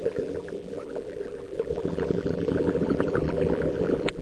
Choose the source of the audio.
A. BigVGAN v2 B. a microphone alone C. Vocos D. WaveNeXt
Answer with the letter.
A